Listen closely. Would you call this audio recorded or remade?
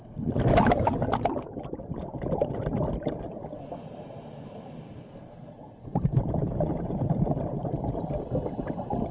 remade